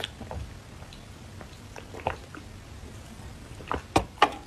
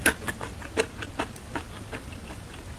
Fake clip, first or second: second